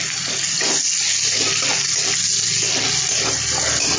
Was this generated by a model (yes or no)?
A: no